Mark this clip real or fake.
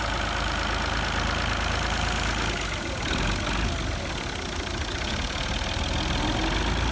real